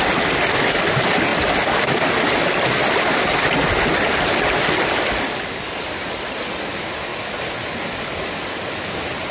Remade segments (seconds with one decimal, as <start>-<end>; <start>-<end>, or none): none